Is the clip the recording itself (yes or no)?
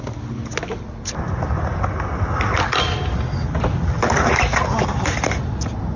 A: yes